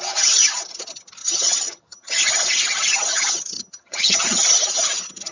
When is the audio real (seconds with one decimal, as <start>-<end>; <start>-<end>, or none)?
0.0-1.2; 2.2-3.1; 4.2-5.3